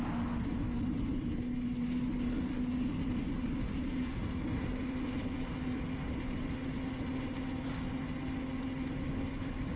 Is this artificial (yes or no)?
no